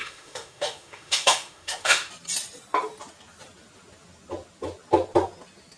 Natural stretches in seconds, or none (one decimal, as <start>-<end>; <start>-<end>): 2.1-5.8